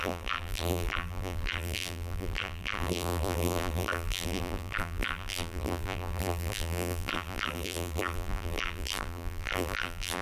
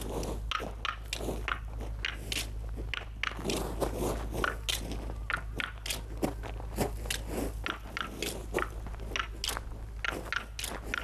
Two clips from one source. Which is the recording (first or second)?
second